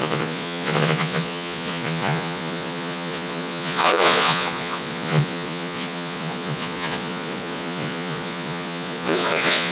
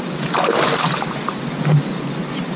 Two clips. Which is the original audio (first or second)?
second